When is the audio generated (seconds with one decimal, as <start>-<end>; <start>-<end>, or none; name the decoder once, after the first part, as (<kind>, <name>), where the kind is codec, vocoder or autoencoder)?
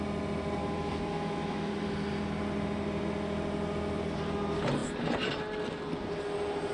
0.6-1.7 (autoencoder, DAC-VAE)